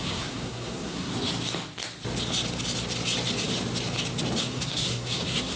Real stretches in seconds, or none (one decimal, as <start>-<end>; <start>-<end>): 1.1-4.4